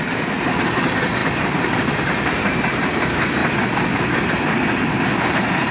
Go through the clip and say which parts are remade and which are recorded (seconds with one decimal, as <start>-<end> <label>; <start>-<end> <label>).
0.0-3.4 remade; 3.4-4.3 recorded; 4.3-4.8 remade; 4.8-5.3 recorded; 5.3-5.7 remade